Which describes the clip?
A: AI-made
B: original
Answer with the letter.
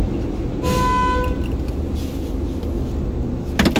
B